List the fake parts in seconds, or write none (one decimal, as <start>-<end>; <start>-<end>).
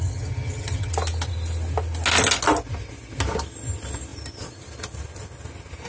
0.0-0.9